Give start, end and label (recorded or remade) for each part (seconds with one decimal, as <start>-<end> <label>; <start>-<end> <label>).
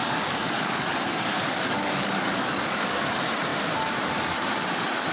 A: 0.0-3.1 remade; 3.1-5.1 recorded